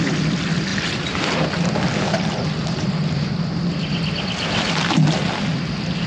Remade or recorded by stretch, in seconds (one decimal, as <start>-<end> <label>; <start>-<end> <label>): 0.0-0.7 recorded; 0.7-1.5 remade; 1.5-6.1 recorded